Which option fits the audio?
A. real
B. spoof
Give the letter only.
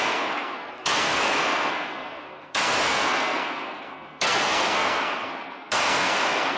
B